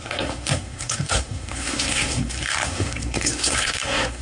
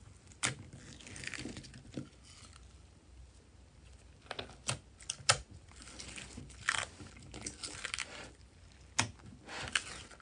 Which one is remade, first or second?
first